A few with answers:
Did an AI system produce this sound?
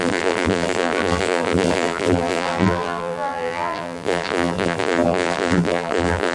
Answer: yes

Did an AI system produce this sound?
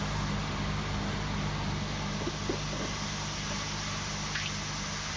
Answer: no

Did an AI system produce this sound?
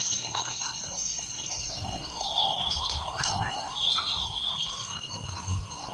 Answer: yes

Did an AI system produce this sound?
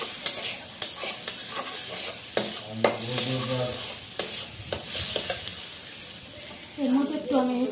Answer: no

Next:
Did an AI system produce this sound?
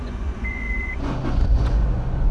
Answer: yes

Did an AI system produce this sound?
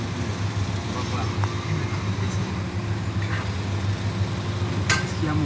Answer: no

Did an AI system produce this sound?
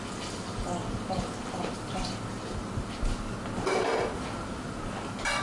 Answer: no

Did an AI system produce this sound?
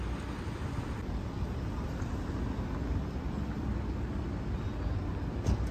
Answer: no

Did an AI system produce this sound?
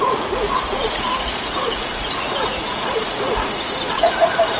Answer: yes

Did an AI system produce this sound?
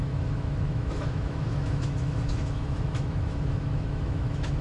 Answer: yes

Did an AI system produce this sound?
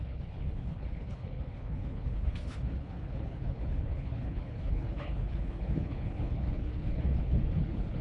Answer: yes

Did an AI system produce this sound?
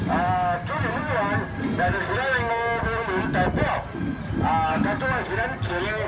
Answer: no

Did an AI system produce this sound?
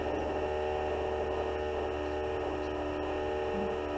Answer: no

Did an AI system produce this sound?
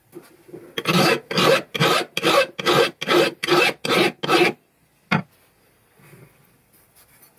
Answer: no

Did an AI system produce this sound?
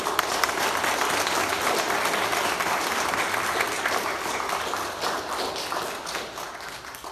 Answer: no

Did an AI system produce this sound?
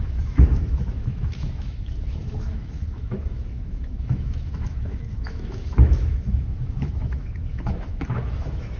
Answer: yes